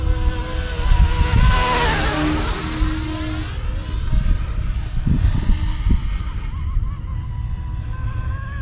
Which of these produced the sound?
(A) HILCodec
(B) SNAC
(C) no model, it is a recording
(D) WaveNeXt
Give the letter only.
C